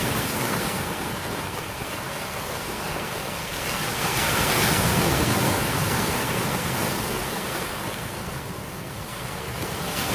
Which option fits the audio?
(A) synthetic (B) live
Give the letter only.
A